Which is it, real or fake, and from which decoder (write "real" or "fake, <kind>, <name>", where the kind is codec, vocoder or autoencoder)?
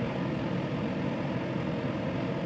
real